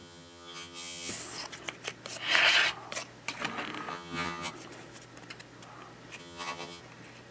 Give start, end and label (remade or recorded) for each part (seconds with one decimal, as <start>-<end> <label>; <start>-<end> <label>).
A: 0.0-1.1 remade; 1.1-3.9 recorded; 3.9-4.5 remade; 4.5-6.2 recorded; 6.2-6.8 remade; 6.8-7.3 recorded